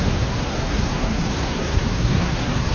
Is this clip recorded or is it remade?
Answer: remade